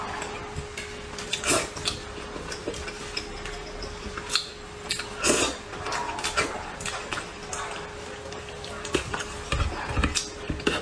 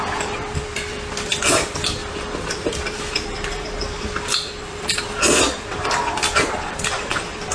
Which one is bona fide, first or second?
first